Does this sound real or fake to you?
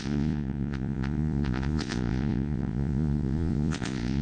fake